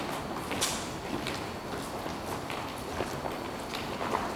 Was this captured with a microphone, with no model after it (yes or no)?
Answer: yes